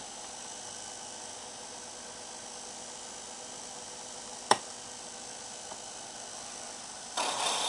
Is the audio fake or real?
real